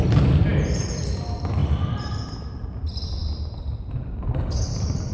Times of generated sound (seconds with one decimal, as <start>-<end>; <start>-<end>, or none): none